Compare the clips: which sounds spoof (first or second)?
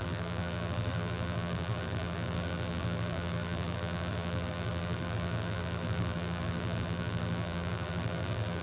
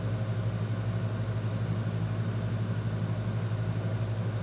first